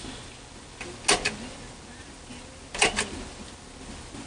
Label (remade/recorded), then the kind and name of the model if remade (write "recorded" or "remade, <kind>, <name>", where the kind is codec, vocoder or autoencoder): recorded